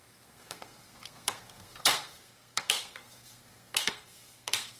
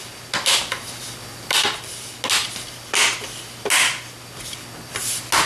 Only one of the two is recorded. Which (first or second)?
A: second